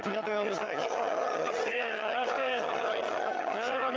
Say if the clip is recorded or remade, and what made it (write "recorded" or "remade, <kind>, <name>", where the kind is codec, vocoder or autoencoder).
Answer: remade, vocoder, HiFi-GAN